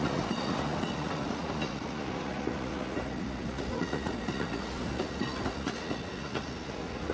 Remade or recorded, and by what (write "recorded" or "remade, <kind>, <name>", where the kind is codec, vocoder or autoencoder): remade, vocoder, Vocos